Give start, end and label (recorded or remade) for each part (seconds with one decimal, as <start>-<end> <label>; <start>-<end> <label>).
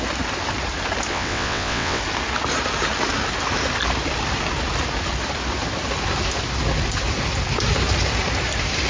0.0-1.1 recorded; 1.1-2.0 remade; 2.0-8.9 recorded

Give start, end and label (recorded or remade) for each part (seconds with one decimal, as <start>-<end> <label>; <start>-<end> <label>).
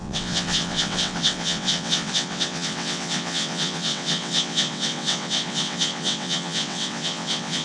0.0-7.6 remade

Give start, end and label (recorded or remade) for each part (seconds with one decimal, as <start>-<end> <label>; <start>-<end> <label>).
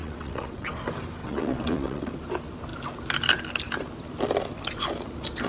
0.0-0.7 remade; 0.7-1.2 recorded; 1.2-2.1 remade; 2.1-5.5 recorded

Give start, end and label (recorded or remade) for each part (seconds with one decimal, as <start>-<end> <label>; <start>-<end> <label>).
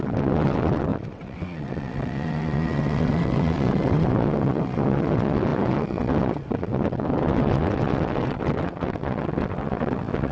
0.0-10.3 remade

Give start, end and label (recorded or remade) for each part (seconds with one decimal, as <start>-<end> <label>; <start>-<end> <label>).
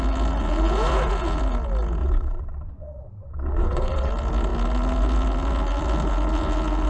0.0-2.0 recorded; 2.0-4.1 remade; 4.1-6.9 recorded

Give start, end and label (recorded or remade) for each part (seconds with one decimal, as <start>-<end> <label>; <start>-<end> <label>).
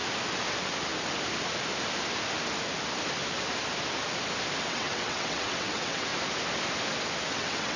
0.0-4.6 recorded; 4.6-6.1 remade; 6.1-7.3 recorded; 7.3-7.8 remade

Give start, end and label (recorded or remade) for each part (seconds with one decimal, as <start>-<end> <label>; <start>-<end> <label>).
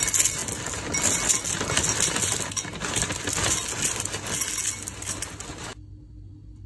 0.0-6.7 recorded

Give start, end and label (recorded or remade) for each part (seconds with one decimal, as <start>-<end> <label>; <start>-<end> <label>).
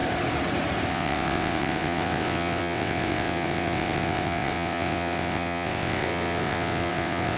0.0-0.9 recorded; 0.9-7.4 remade